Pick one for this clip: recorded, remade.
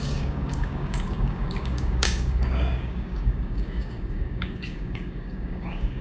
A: remade